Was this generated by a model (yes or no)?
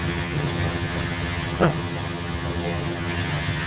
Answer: yes